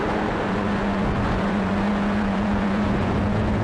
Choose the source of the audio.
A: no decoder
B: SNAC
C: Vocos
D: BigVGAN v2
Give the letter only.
C